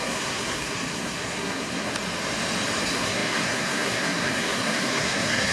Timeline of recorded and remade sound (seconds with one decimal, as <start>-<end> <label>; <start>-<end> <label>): 0.0-1.9 remade; 1.9-2.8 recorded; 2.8-5.5 remade